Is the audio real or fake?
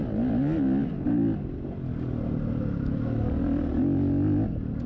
real